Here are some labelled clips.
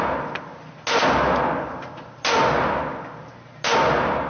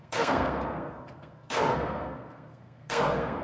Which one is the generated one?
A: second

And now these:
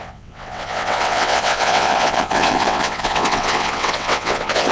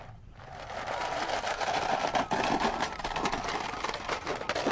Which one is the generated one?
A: first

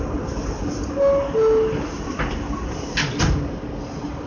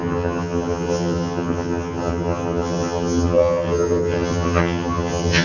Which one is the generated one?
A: second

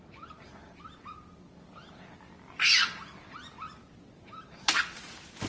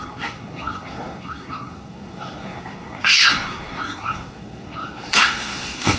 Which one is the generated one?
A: second